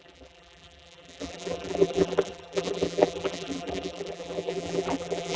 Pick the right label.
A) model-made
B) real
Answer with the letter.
A